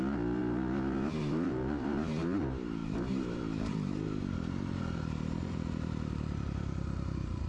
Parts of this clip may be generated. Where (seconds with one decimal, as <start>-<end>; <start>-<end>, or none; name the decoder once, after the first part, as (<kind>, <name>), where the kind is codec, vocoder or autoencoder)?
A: 0.0-7.5 (vocoder, BigVGAN v2)